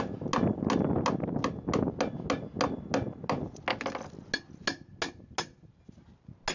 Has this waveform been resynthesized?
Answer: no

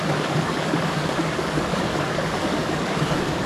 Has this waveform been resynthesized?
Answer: yes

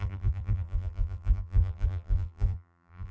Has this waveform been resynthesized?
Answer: yes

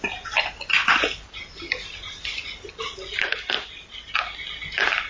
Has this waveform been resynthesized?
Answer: no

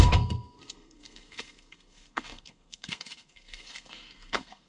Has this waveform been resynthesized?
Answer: yes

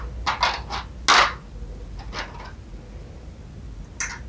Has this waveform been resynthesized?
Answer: no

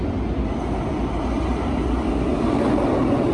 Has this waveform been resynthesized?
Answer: no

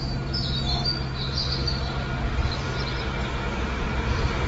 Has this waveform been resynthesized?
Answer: no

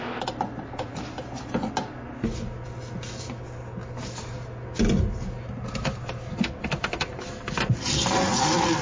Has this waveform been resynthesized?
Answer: no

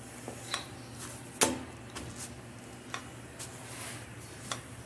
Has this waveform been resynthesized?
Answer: no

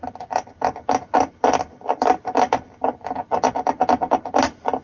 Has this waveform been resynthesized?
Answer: no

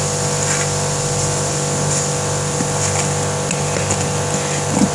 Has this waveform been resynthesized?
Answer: no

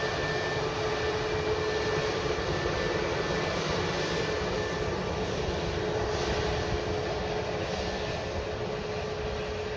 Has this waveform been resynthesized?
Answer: no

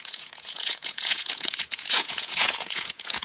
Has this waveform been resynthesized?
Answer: yes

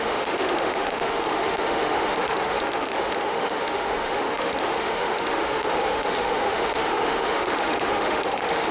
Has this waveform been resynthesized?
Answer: yes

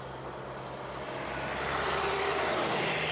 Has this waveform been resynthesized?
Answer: no